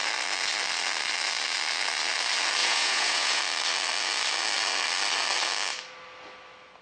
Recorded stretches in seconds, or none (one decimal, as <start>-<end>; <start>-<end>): 0.0-2.6; 3.4-6.8